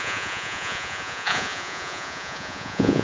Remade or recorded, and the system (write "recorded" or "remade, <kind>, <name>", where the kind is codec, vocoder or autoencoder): remade, vocoder, Vocos